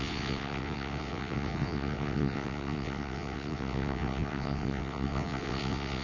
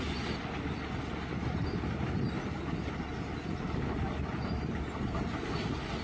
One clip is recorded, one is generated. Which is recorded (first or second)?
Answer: second